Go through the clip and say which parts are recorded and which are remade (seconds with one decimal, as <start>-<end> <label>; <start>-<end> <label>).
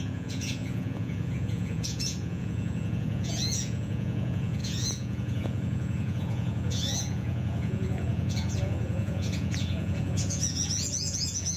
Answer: 0.0-11.6 remade